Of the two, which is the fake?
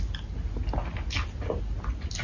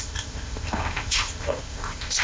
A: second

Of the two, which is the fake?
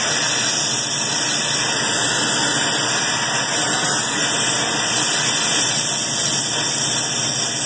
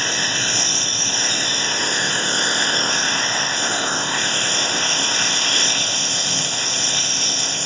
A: second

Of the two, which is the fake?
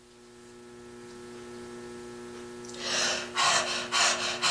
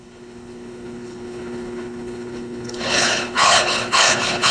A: second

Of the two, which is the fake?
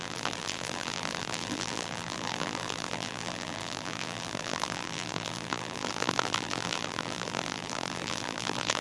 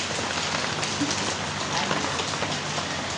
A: first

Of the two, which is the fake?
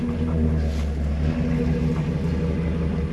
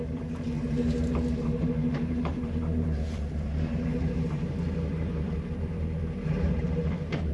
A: second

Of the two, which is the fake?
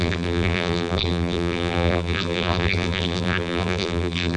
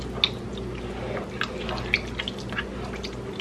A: first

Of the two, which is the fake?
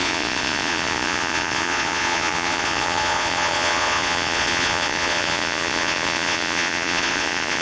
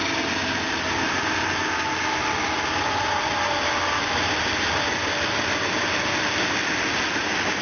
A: first